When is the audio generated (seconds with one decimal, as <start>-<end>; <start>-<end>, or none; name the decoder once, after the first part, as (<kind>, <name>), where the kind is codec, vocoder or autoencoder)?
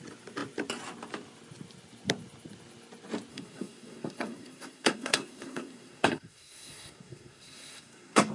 3.3-8.3 (codec, SNAC)